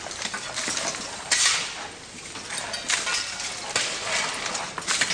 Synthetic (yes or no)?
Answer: no